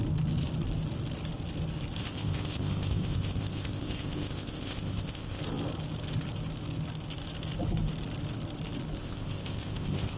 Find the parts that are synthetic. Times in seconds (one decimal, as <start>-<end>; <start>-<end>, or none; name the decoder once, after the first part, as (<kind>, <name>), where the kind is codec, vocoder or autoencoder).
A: 2.0-5.4 (codec, ZipCodec); 9.0-10.2

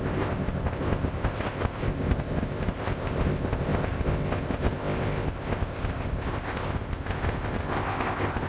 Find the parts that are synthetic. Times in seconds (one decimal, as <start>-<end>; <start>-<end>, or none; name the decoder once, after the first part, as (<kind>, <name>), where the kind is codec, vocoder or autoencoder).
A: 0.0-8.5 (codec, ZipCodec)

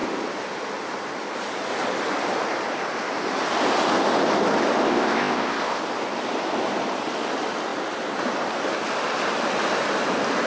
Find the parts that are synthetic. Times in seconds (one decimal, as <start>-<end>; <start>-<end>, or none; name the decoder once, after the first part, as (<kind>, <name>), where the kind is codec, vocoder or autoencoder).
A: 4.8-5.8 (codec, ZipCodec)